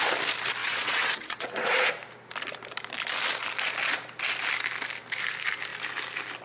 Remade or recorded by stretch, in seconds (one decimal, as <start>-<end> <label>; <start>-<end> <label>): 0.0-0.6 recorded; 0.6-1.8 remade; 1.8-6.4 recorded